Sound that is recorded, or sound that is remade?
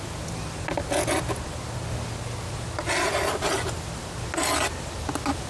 recorded